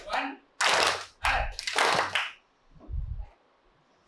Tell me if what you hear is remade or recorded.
recorded